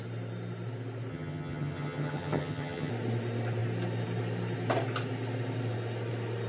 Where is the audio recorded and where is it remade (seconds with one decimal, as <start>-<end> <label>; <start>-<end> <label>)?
0.0-1.1 recorded; 1.1-2.9 remade; 2.9-6.5 recorded